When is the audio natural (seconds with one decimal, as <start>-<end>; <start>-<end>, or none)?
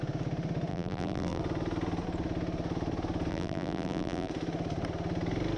0.0-0.7; 1.4-3.3; 4.3-5.6